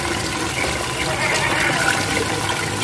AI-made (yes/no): no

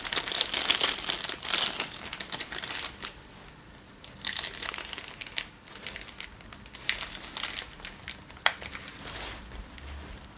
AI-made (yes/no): no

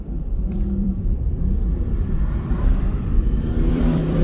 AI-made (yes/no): yes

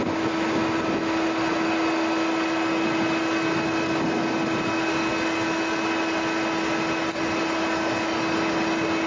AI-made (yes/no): no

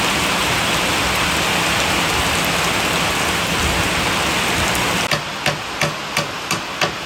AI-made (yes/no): no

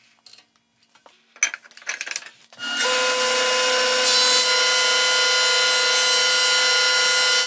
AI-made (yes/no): no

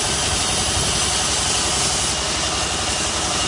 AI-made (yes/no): yes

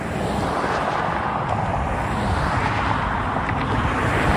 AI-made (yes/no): yes